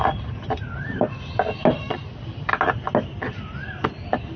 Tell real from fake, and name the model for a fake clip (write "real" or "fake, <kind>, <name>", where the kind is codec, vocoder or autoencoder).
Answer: real